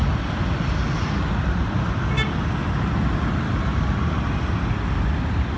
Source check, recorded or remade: recorded